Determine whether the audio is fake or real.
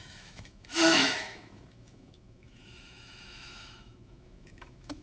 fake